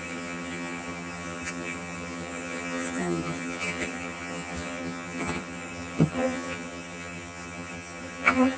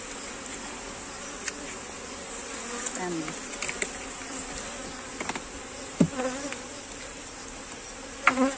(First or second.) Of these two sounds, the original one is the second